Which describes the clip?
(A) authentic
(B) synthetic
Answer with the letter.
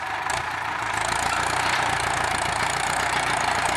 B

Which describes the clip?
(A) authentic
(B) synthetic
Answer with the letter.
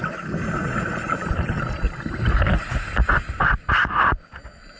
A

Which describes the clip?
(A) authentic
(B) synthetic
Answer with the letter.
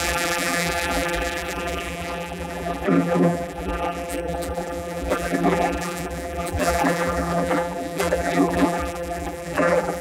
B